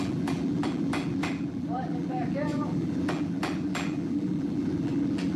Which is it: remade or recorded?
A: remade